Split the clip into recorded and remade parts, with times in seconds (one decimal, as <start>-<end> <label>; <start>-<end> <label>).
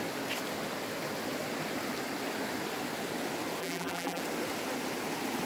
0.0-3.6 recorded; 3.6-4.2 remade; 4.2-5.5 recorded